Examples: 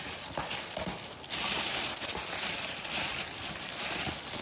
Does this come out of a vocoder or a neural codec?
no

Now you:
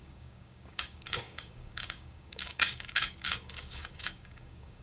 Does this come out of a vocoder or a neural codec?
yes